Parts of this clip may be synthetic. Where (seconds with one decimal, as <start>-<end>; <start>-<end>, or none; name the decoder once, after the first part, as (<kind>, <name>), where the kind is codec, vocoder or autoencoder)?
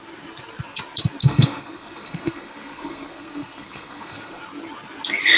1.2-4.4 (codec, SNAC)